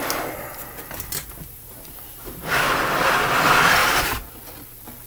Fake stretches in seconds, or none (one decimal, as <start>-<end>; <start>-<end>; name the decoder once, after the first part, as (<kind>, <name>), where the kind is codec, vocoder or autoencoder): 1.2-2.8 (vocoder, BigVGAN v2); 3.8-4.3